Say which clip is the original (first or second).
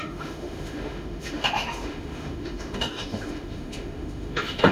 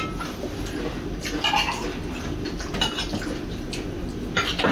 second